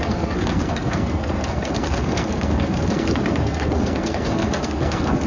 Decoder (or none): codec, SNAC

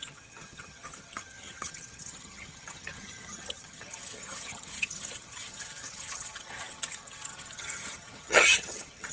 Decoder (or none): vocoder, HiFi-GAN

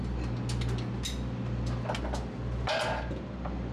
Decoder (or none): none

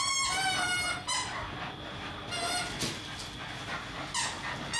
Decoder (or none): none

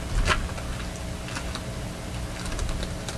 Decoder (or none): none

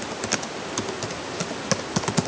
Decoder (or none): none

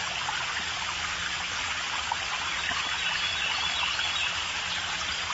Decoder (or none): none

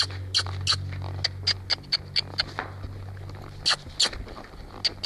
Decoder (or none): none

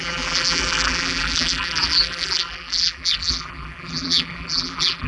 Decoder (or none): vocoder, BigVGAN v2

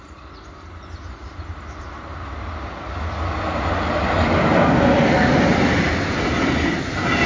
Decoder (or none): none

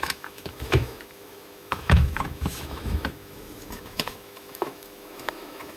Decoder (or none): autoencoder, DAC-VAE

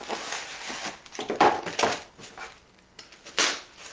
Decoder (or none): none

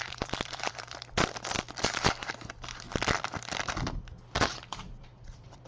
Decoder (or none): vocoder, BigVGAN v2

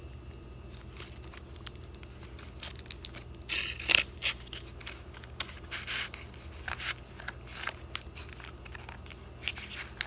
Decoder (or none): none